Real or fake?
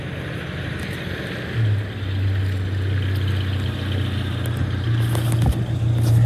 real